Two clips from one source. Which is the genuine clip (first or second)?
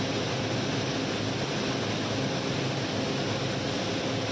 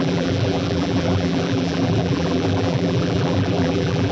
first